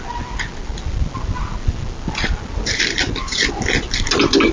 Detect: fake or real real